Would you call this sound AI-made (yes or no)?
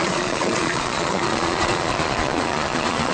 yes